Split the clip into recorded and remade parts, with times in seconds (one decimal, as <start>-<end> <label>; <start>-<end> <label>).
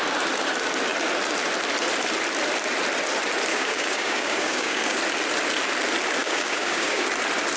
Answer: 0.0-3.5 recorded; 3.5-5.0 remade; 5.0-6.2 recorded; 6.2-7.0 remade; 7.0-7.6 recorded